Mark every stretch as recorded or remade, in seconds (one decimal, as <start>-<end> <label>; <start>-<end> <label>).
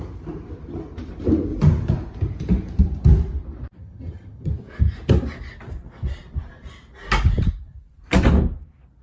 0.0-3.8 recorded; 3.8-4.5 remade; 4.5-9.0 recorded